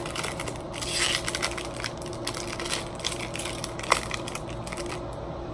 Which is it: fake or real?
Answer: real